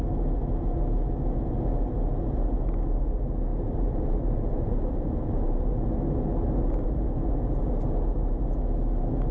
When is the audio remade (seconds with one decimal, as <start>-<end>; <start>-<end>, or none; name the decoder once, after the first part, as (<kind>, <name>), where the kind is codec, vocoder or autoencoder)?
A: 3.5-5.7 (vocoder, BigVGAN v2)